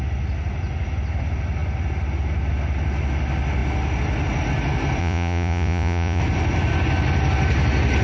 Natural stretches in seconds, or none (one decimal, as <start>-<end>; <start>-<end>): 0.0-5.0; 6.2-8.0